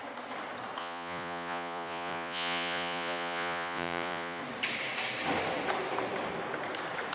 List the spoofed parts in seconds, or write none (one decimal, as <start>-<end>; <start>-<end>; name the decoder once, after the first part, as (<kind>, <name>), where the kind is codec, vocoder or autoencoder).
0.8-4.4 (vocoder, Vocos)

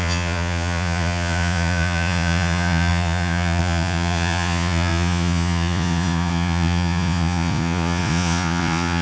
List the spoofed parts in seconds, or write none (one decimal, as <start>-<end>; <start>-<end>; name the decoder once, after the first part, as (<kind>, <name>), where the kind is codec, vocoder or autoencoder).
0.0-9.0 (vocoder, Vocos)